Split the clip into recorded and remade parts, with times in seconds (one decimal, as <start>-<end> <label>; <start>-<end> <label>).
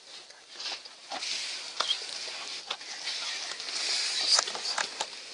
0.0-5.3 recorded